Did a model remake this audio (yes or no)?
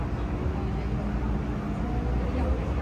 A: no